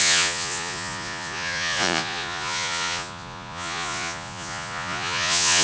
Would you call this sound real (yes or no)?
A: no